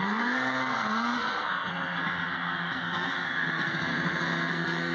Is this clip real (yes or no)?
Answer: no